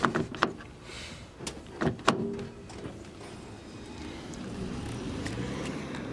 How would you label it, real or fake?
real